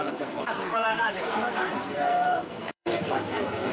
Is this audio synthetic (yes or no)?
yes